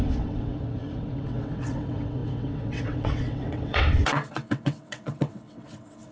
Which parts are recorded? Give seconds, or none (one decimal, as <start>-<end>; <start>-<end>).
none